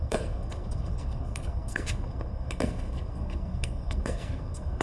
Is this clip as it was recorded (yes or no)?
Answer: no